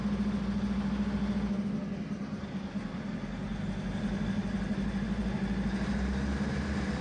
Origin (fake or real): real